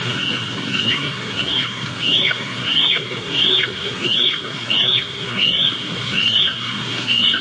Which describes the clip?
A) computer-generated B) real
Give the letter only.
A